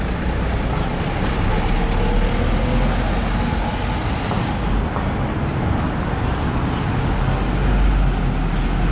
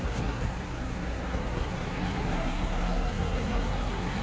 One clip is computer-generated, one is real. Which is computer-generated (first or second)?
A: second